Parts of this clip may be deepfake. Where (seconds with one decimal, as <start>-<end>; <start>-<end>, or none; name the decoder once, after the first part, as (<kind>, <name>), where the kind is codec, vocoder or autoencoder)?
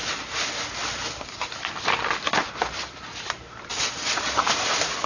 none